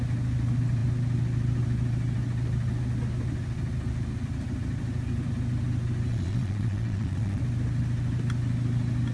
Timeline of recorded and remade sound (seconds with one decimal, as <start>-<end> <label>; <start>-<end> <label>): 0.0-6.1 recorded; 6.1-7.4 remade; 7.4-9.1 recorded